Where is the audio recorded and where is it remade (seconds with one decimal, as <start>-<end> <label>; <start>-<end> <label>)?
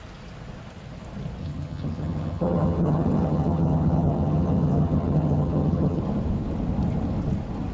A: 0.0-1.4 recorded; 1.4-6.0 remade; 6.0-7.7 recorded